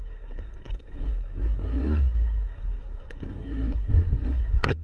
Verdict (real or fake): fake